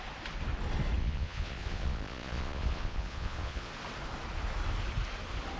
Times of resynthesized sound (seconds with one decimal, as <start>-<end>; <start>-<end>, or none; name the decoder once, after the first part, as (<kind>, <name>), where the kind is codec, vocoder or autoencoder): 1.0-3.7 (vocoder, Vocos)